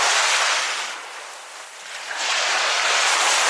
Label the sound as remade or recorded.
recorded